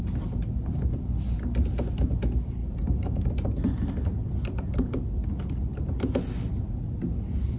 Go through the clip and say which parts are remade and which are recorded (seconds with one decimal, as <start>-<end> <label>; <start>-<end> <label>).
0.0-2.6 recorded; 2.6-3.3 remade; 3.3-7.6 recorded